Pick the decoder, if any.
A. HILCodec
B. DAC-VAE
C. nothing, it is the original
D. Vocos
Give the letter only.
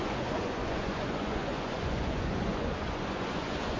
D